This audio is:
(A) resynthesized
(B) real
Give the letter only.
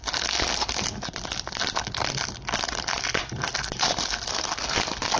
B